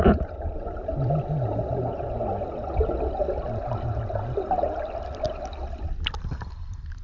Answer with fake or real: real